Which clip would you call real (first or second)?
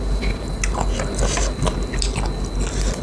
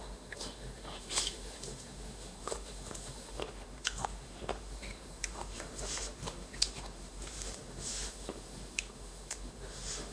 first